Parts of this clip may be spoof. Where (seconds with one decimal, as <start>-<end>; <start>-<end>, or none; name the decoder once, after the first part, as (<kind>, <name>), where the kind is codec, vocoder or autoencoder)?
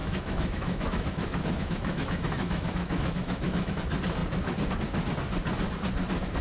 0.0-3.8 (autoencoder, DAC-VAE)